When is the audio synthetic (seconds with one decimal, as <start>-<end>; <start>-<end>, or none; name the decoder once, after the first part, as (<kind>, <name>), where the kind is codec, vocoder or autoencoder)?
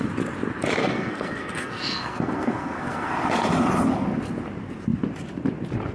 0.8-3.1 (codec, SNAC)